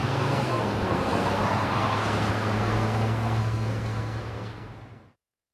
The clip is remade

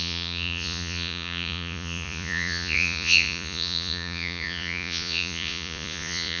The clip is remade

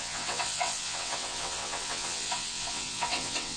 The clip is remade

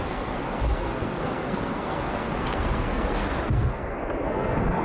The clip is remade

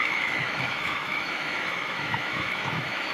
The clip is remade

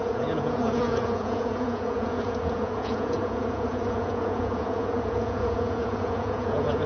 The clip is remade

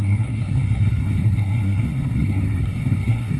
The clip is remade